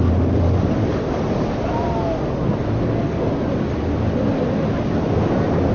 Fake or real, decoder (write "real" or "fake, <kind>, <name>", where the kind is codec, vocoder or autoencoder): real